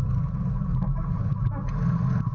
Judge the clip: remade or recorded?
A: recorded